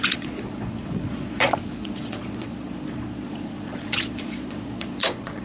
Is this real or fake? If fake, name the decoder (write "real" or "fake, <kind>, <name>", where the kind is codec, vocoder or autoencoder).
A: fake, vocoder, Vocos